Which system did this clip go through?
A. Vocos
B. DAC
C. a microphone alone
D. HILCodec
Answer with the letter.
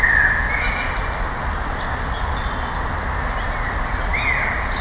C